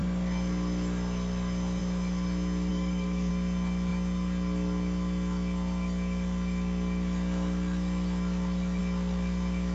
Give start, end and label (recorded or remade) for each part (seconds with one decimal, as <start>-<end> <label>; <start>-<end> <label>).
0.0-2.7 recorded; 2.7-3.3 remade; 3.3-9.7 recorded